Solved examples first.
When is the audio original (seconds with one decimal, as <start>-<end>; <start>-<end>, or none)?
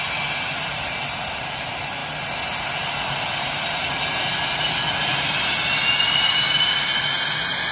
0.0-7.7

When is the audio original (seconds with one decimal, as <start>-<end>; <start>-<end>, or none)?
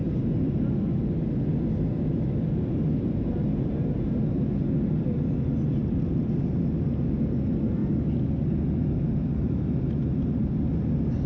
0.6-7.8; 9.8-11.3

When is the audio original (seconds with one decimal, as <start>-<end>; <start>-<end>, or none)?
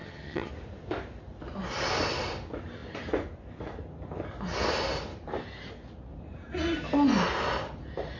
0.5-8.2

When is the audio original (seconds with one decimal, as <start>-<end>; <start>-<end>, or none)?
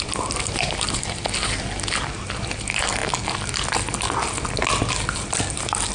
0.0-5.9